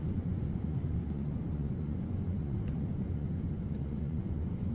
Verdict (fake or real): fake